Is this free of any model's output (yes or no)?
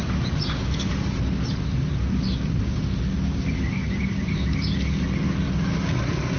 yes